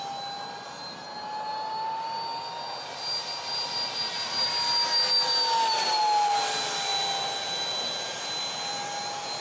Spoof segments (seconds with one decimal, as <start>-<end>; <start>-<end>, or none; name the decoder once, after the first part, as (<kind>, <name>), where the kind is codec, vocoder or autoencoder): none